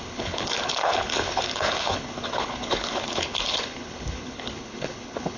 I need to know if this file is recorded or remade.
remade